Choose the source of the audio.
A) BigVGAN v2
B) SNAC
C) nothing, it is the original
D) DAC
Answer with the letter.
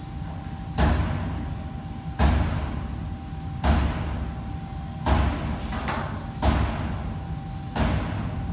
C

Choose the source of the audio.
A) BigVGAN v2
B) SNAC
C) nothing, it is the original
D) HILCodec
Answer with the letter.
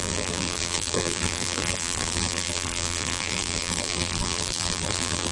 A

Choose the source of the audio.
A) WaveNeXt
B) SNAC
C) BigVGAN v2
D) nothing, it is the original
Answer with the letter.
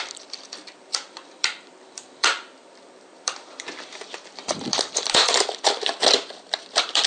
C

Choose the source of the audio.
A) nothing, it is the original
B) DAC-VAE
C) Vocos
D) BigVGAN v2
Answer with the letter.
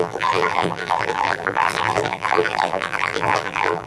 D